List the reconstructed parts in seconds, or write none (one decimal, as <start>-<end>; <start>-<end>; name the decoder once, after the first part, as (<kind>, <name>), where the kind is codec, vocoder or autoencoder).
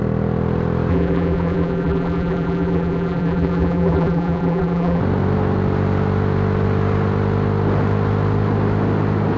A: 0.9-5.0 (vocoder, BigVGAN v2)